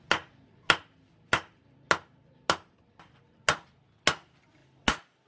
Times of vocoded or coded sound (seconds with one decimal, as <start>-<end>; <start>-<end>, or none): none